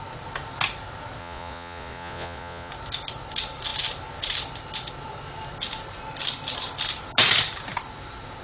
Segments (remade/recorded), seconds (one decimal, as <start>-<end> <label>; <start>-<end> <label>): 0.0-1.2 recorded; 1.2-2.7 remade; 2.7-8.4 recorded